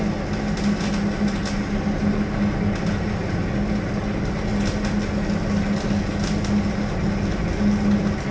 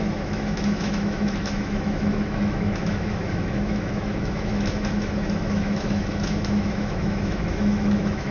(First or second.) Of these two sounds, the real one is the first